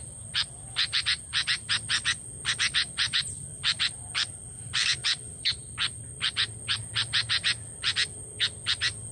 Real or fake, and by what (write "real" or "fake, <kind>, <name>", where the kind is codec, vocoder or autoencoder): fake, vocoder, BigVGAN v2